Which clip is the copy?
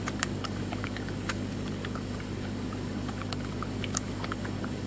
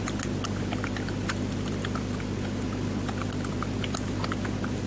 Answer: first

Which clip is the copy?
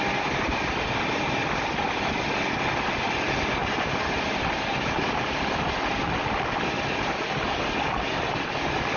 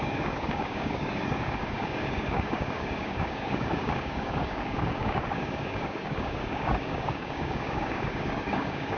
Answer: second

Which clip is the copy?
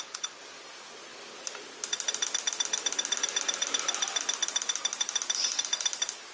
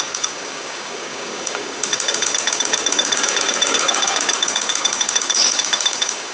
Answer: second